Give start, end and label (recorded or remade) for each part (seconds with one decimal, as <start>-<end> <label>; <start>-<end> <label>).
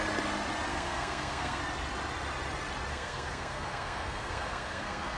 0.0-0.7 recorded; 0.7-1.6 remade; 1.6-2.9 recorded; 2.9-5.2 remade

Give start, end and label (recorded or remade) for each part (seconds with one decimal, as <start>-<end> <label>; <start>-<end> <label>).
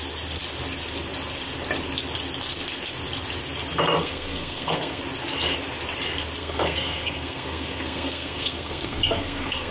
0.0-4.0 recorded; 4.0-5.0 remade; 5.0-6.4 recorded; 6.4-9.7 remade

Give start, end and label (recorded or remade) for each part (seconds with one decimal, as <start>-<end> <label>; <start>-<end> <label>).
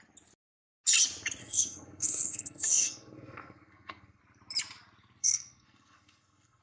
0.0-1.4 recorded; 1.4-4.2 remade; 4.2-5.2 recorded; 5.2-6.6 remade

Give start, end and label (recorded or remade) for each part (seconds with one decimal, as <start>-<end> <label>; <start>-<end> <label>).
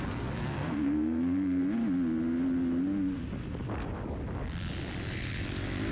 0.0-0.5 recorded; 0.5-1.6 remade; 1.6-5.9 recorded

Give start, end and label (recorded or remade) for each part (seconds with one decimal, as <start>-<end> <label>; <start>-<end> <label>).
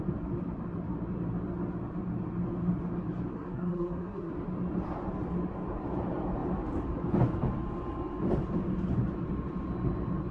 0.0-3.3 recorded; 3.3-4.3 remade; 4.3-10.3 recorded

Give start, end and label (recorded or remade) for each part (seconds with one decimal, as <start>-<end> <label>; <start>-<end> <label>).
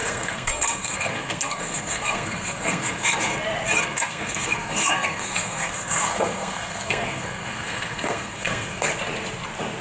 0.0-3.3 remade; 3.3-3.8 recorded; 3.8-8.9 remade; 8.9-9.8 recorded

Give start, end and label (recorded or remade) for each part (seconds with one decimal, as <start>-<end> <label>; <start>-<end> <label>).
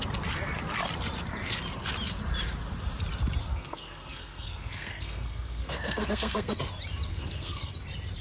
0.0-3.4 recorded; 3.4-6.6 remade; 6.6-7.1 recorded; 7.1-7.7 remade; 7.7-8.2 recorded